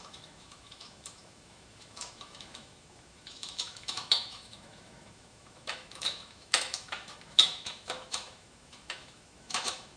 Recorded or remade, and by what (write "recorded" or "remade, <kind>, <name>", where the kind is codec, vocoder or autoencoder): remade, autoencoder, DAC-VAE